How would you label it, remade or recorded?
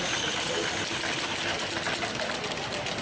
recorded